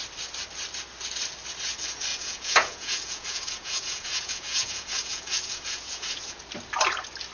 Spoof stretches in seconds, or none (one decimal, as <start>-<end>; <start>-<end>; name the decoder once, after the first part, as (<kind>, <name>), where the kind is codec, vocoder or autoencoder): 2.1-6.4 (vocoder, Vocos)